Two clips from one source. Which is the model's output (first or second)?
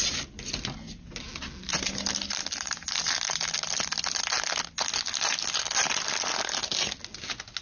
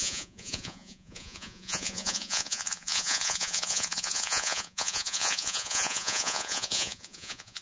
second